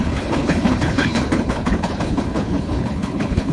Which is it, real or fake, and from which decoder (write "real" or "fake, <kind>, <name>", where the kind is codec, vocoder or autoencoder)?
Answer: fake, codec, HILCodec